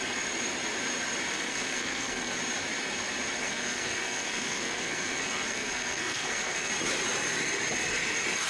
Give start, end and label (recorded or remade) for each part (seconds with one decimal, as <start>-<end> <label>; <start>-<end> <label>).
0.0-1.3 recorded; 1.3-2.4 remade; 2.4-3.4 recorded; 3.4-6.7 remade; 6.7-8.5 recorded